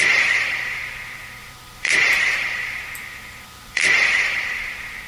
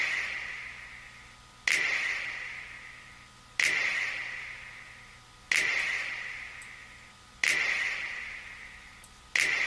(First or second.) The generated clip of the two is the first